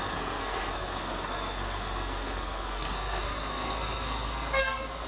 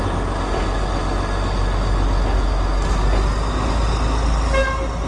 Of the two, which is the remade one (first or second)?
first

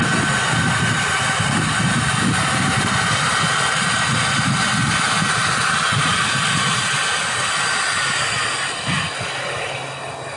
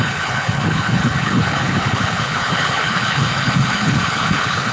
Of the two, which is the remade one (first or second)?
second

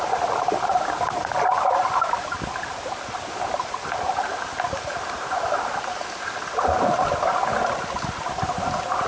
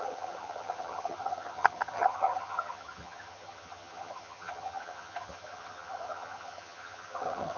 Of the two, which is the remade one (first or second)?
second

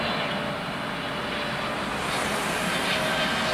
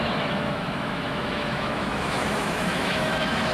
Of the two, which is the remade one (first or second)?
second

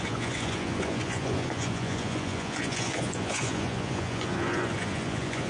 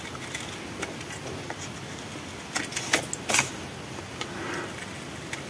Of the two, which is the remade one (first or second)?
first